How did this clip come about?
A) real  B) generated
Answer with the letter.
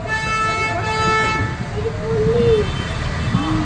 A